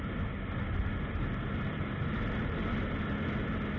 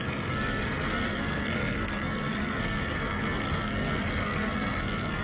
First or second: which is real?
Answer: first